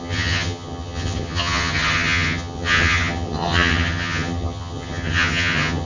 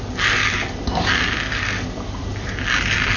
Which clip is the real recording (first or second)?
second